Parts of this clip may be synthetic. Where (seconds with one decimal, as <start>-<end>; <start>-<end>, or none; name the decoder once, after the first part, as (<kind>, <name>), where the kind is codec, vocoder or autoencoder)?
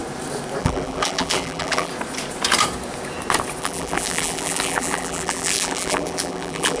0.6-1.9 (vocoder, BigVGAN v2); 3.6-6.8